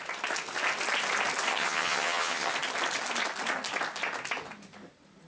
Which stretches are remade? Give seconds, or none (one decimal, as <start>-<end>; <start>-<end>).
1.5-2.5